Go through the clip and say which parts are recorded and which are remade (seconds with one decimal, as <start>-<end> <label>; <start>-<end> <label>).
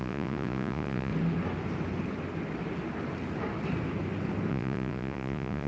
0.0-1.1 remade; 1.1-4.5 recorded; 4.5-5.7 remade